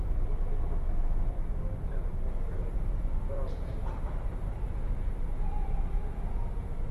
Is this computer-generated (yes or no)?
no